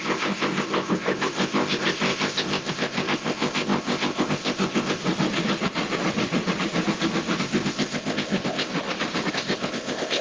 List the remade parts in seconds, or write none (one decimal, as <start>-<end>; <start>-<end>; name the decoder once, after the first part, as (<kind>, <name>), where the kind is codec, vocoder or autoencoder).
0.0-5.0 (codec, ZipCodec); 7.4-8.7; 9.3-10.2